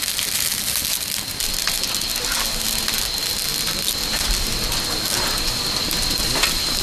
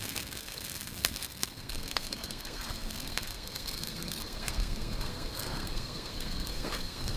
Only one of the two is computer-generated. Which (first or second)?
second